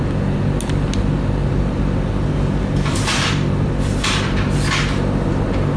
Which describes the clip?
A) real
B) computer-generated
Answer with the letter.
A